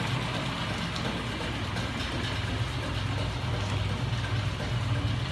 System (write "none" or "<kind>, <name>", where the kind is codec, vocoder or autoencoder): none